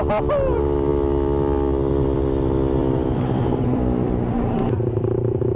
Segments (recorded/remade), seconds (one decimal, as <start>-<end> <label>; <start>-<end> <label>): 0.0-2.8 recorded; 2.8-4.9 remade; 4.9-5.6 recorded